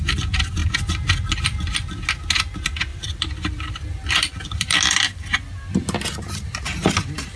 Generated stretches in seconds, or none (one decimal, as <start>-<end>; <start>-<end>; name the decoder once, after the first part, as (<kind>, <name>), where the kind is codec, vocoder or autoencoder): 2.9-5.3 (vocoder, BigVGAN v2)